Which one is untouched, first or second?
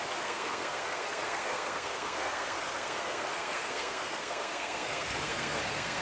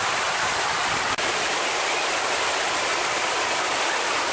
second